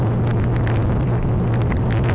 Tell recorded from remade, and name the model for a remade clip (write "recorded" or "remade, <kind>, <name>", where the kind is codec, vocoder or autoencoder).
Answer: recorded